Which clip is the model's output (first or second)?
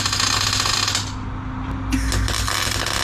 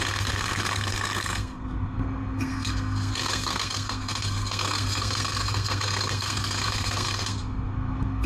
second